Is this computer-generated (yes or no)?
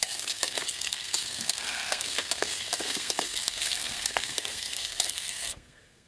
yes